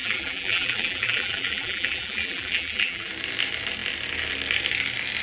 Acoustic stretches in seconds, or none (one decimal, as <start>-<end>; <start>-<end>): 3.1-5.2